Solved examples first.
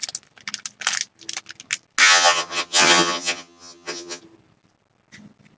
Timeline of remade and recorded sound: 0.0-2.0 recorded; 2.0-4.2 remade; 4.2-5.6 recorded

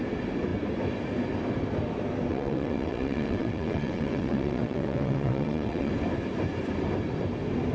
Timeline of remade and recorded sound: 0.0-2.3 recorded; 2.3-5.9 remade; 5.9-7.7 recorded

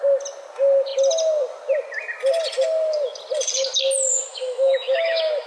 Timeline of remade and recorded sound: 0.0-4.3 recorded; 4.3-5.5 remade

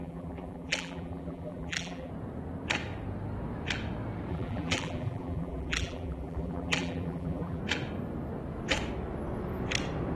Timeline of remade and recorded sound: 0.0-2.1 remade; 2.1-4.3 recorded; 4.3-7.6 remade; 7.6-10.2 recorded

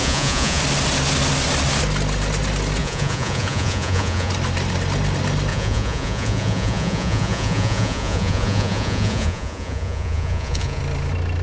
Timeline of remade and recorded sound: 0.0-0.6 remade; 0.6-2.8 recorded; 2.8-4.3 remade; 4.3-5.5 recorded; 5.5-10.8 remade; 10.8-11.4 recorded

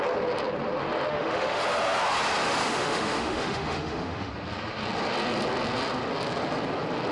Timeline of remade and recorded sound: 0.0-1.1 recorded; 1.1-1.6 remade; 1.6-2.6 recorded; 2.6-4.3 remade; 4.3-7.1 recorded